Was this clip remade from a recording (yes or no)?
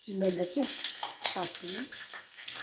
yes